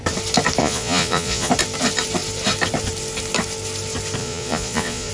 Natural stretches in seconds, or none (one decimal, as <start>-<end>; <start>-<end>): 0.0-0.6; 1.5-4.2